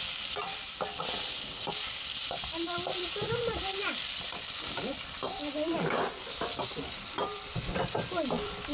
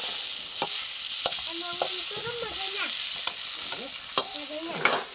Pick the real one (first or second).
second